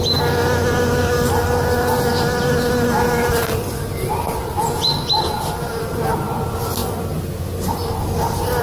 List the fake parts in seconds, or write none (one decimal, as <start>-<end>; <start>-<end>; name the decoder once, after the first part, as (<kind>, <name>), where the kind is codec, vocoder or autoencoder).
none